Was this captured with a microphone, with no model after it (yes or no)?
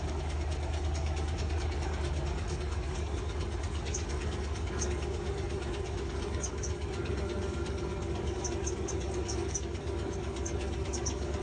no